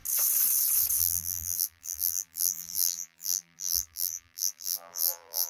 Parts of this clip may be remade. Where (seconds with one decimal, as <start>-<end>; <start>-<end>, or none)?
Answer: 1.0-5.5